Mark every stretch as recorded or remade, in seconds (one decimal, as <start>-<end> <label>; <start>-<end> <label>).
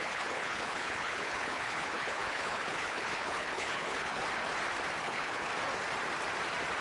0.0-4.2 remade; 4.2-5.0 recorded; 5.0-5.5 remade; 5.5-6.8 recorded